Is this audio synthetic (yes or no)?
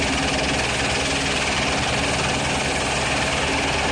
no